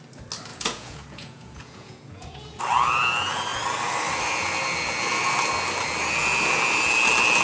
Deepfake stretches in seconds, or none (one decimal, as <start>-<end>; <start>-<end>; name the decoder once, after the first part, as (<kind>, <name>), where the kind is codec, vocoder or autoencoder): 0.5-2.6 (vocoder, Vocos)

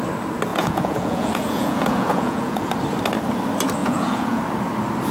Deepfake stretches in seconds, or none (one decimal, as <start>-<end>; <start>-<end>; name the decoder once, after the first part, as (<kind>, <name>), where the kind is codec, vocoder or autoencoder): 0.5-2.7 (vocoder, Vocos); 3.8-4.4

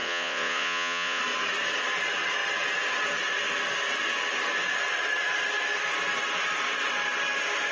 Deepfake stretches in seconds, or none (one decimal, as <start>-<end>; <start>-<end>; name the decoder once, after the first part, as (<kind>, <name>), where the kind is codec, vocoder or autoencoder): 0.0-1.2 (vocoder, Vocos)

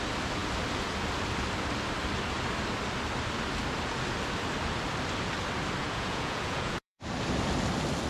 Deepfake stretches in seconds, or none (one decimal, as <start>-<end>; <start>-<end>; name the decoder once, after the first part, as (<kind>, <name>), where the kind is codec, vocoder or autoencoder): 5.8-7.0 (vocoder, Vocos)